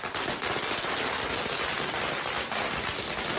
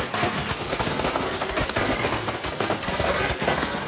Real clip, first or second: first